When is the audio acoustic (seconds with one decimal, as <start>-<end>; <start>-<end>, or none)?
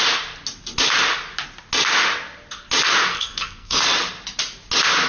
0.0-3.1; 3.8-5.1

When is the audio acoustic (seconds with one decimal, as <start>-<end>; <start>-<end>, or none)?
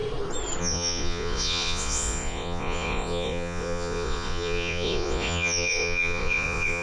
0.0-0.6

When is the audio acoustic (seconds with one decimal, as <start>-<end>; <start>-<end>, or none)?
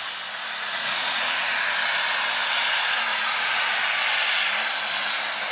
0.0-0.4; 1.5-3.1; 3.7-5.5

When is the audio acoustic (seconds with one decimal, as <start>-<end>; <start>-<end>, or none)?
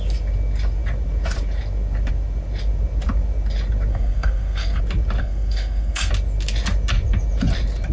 0.0-3.9; 4.8-5.2; 6.1-7.9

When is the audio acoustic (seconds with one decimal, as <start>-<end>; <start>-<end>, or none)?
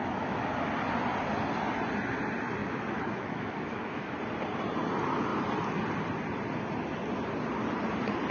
0.7-2.6; 4.1-8.3